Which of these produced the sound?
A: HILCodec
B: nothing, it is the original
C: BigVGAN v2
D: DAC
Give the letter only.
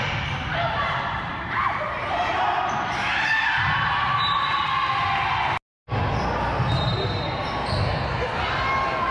B